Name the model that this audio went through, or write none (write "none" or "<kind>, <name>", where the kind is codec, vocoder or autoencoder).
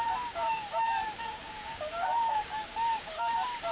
codec, DAC